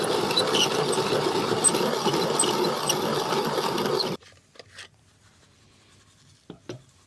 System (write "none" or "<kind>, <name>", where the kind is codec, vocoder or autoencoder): none